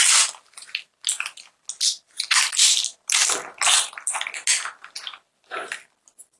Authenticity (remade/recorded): recorded